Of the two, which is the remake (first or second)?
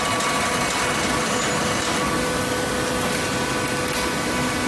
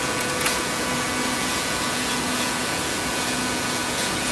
second